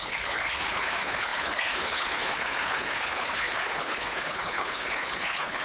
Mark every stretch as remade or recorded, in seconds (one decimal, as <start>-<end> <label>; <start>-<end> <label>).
0.0-5.6 remade